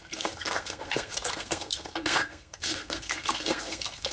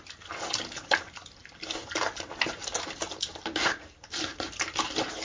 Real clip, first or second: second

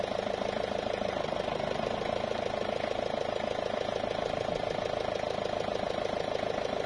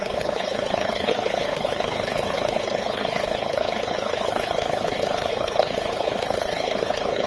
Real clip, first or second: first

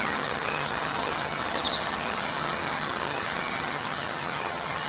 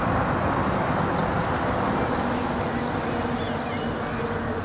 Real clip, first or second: second